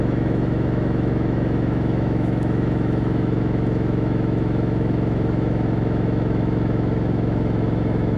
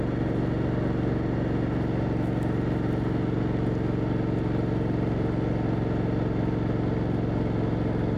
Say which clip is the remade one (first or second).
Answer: first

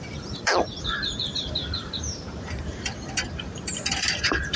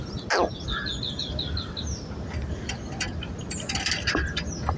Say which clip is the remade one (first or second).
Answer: first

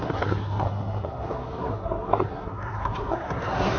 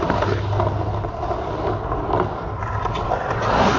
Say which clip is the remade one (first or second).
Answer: first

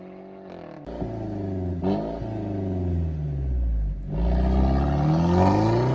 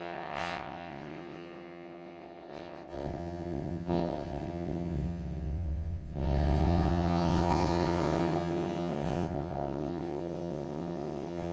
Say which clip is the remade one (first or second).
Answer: second